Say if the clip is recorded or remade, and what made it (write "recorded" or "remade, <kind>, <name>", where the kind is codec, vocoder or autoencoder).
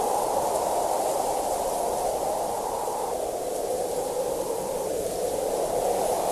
recorded